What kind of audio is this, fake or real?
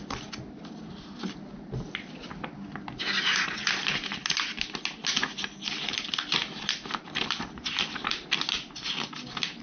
real